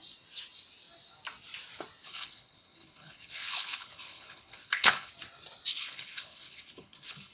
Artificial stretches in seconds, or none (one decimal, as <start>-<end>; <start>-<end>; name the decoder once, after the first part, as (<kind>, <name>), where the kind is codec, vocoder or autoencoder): 2.0-5.1 (codec, HILCodec); 5.7-7.3